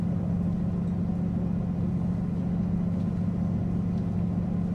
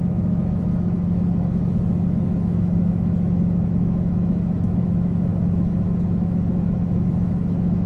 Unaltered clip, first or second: first